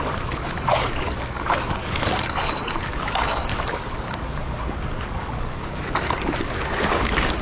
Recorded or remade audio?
remade